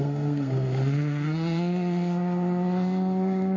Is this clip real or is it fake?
fake